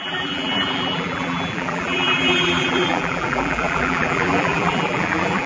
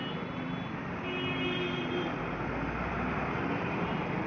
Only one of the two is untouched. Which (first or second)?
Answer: second